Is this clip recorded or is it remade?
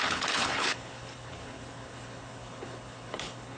remade